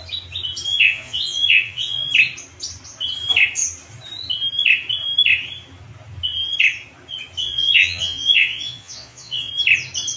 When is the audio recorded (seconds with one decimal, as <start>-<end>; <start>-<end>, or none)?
0.0-0.7; 2.1-7.4; 9.5-10.2